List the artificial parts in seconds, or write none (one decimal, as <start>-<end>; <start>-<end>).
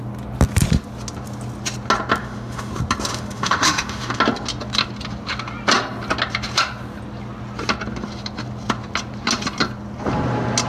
2.2-2.7; 3.1-4.2